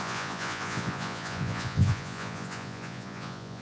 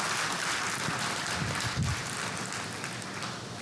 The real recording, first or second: second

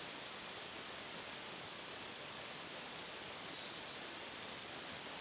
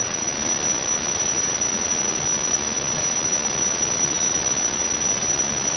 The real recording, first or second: first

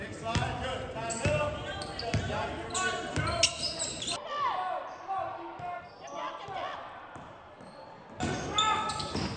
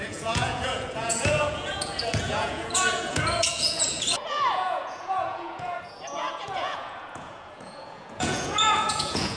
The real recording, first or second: first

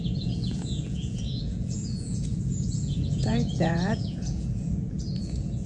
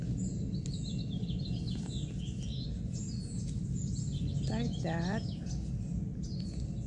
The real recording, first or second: second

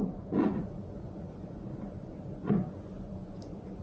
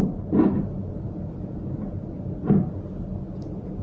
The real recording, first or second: second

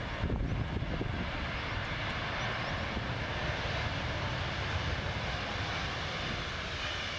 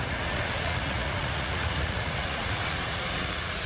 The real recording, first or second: first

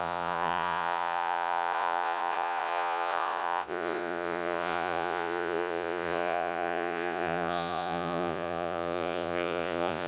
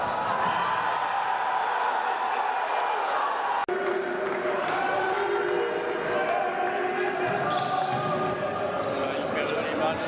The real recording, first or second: second